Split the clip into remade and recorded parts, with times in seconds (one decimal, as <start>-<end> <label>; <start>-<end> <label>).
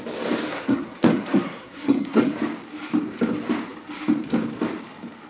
0.0-0.5 recorded; 0.5-2.3 remade; 2.3-5.3 recorded